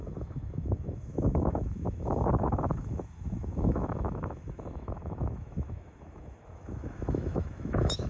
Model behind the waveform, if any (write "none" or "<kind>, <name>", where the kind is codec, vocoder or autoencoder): autoencoder, DAC-VAE